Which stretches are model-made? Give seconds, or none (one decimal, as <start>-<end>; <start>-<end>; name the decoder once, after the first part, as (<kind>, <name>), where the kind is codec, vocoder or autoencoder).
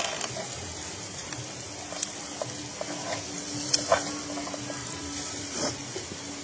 4.8-5.7 (vocoder, BigVGAN v2)